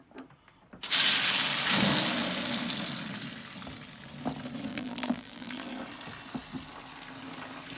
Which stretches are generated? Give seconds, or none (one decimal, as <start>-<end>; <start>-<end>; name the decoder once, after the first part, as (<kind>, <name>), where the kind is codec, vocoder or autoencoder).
4.7-5.7 (vocoder, BigVGAN v2)